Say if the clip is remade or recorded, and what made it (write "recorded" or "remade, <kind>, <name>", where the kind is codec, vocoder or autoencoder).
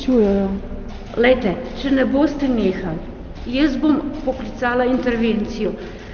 recorded